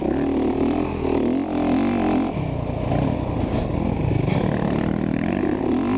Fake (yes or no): no